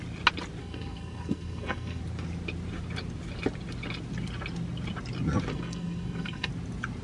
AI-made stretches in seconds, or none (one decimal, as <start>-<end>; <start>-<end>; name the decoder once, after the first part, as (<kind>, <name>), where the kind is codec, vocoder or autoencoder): 0.6-2.0 (codec, SNAC); 5.5-6.5